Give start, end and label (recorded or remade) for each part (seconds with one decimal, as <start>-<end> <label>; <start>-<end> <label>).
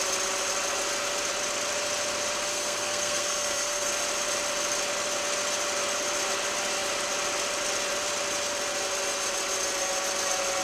0.0-2.5 recorded; 2.5-3.9 remade; 3.9-10.6 recorded